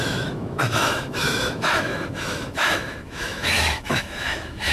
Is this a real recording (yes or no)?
no